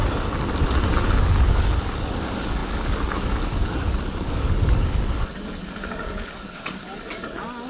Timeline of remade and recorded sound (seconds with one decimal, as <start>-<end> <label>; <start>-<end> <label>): 0.0-1.2 recorded; 1.2-7.7 remade